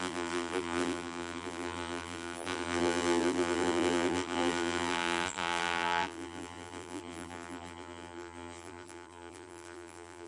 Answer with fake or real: fake